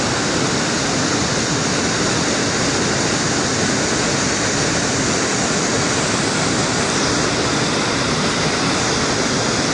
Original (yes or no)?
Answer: yes